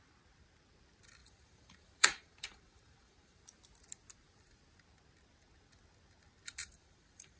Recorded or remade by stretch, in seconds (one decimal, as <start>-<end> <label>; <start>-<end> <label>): 0.0-1.2 recorded; 1.2-3.4 remade; 3.4-6.6 recorded; 6.6-7.4 remade